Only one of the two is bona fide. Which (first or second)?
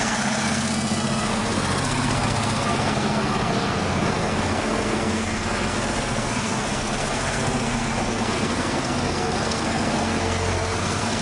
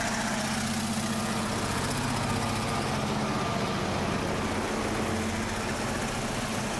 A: second